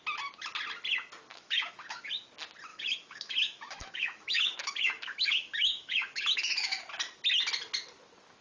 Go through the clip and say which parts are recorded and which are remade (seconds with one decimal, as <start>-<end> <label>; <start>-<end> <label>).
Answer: 0.0-1.3 recorded; 1.3-2.1 remade; 2.1-2.7 recorded; 2.7-6.8 remade; 6.8-8.4 recorded